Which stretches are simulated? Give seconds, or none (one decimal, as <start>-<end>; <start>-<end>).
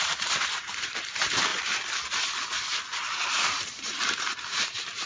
0.0-1.5; 3.3-5.1